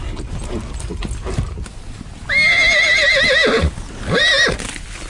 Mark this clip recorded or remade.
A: recorded